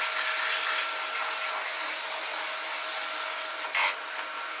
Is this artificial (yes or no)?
no